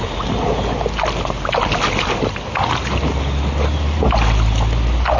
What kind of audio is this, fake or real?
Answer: real